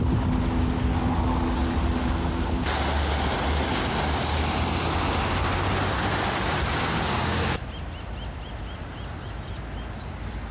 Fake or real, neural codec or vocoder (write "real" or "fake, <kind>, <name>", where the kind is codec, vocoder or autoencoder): real